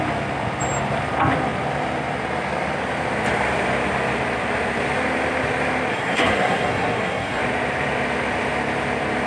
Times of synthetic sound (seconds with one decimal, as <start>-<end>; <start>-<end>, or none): 5.9-7.4